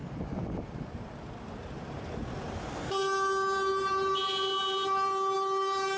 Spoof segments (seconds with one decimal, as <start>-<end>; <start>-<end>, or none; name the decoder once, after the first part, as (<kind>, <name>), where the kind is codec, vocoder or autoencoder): none